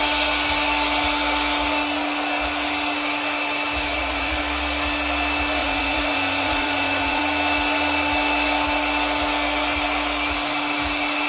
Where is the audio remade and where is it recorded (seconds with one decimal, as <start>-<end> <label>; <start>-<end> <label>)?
0.0-3.9 recorded; 3.9-4.4 remade; 4.4-5.6 recorded; 5.6-7.2 remade; 7.2-11.3 recorded